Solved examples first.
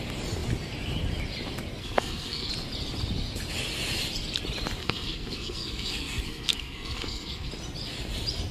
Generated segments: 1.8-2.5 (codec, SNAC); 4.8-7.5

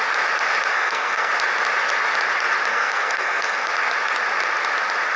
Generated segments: 0.7-1.3 (codec, SNAC); 2.7-3.7

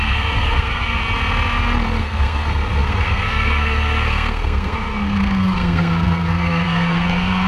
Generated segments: 0.0-1.0 (codec, SNAC); 2.0-7.5

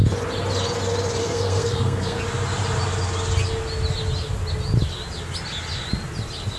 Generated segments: 1.2-2.2 (codec, SNAC)

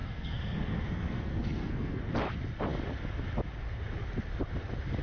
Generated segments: 0.0-2.0 (codec, SNAC)